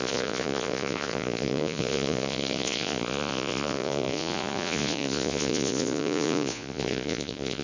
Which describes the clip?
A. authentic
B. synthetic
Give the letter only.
B